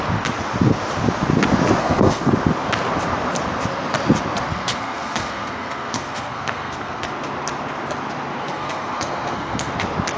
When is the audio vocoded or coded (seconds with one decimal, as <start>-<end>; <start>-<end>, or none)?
1.8-2.3; 4.5-7.1; 8.5-9.7

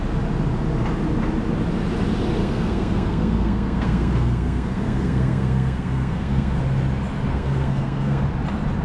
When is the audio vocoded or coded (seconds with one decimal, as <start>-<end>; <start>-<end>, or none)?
2.4-6.6; 7.3-8.2

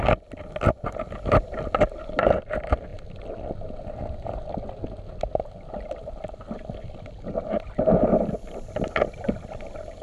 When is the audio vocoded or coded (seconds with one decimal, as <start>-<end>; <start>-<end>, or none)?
none

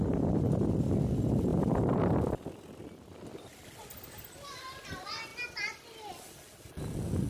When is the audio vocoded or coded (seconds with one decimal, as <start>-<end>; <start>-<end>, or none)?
none

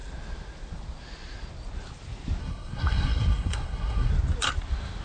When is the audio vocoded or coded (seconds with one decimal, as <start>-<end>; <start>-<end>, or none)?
2.4-4.1